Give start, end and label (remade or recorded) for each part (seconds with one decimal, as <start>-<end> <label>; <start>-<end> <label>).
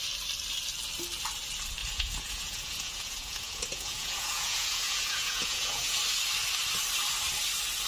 0.0-1.8 recorded; 1.8-6.0 remade; 6.0-7.9 recorded